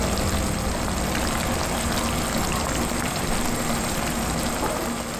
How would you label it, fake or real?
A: real